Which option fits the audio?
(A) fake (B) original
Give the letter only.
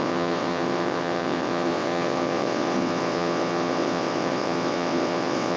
A